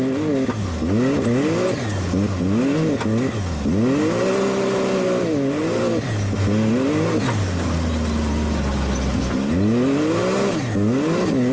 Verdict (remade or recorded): recorded